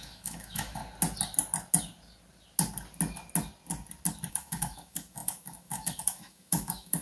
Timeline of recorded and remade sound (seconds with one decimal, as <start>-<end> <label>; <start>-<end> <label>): 0.0-0.8 remade; 0.8-4.3 recorded; 4.3-7.0 remade